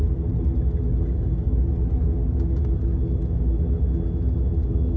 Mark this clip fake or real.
real